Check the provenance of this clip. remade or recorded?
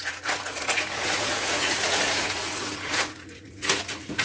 remade